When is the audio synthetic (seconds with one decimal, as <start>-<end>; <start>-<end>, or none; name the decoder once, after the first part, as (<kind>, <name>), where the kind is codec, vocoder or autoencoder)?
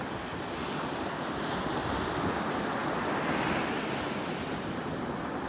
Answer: none